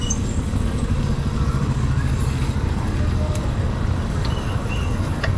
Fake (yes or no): yes